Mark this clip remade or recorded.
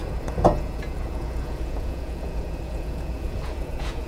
remade